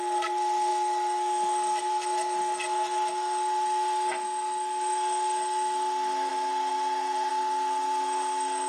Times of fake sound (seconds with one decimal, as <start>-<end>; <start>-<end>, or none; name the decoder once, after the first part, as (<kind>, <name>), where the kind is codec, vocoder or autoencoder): 0.0-8.7 (codec, SNAC)